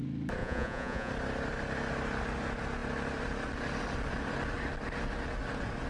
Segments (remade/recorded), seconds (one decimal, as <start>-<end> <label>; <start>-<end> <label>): 0.0-0.4 recorded; 0.4-1.1 remade; 1.1-5.9 recorded